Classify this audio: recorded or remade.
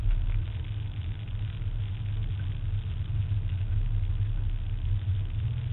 recorded